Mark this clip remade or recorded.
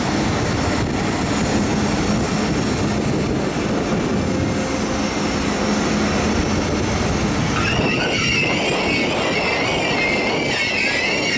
recorded